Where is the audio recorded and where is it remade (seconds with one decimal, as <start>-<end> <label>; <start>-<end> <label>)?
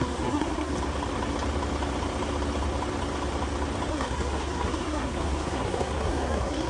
0.0-0.7 remade; 0.7-3.9 recorded; 3.9-6.7 remade